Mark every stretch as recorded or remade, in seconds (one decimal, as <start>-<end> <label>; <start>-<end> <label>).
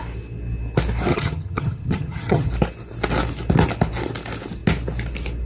0.0-1.1 recorded; 1.1-2.5 remade; 2.5-5.5 recorded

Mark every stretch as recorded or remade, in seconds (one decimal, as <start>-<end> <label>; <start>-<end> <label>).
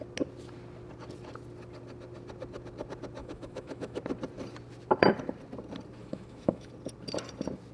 0.0-3.2 recorded; 3.2-4.0 remade; 4.0-6.0 recorded; 6.0-6.7 remade; 6.7-7.7 recorded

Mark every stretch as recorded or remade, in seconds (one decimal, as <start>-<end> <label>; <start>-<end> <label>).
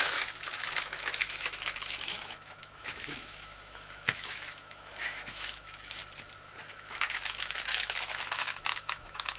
0.0-6.0 remade; 6.0-6.7 recorded; 6.7-9.4 remade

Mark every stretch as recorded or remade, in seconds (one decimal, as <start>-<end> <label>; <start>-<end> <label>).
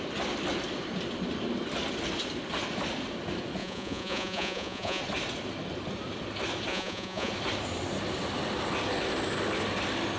0.0-3.6 recorded; 3.6-5.0 remade; 5.0-6.7 recorded; 6.7-7.3 remade; 7.3-10.2 recorded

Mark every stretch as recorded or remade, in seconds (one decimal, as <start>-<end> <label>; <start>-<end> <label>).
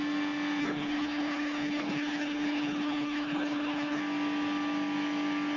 0.0-0.6 recorded; 0.6-4.0 remade; 4.0-5.6 recorded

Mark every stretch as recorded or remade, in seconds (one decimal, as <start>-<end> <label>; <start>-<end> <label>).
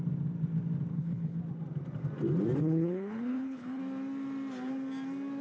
0.0-0.9 recorded; 0.9-1.4 remade; 1.4-2.6 recorded; 2.6-3.8 remade; 3.8-5.4 recorded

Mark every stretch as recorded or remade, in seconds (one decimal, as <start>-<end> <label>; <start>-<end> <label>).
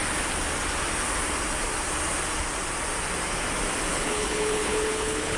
0.0-3.9 recorded; 3.9-5.4 remade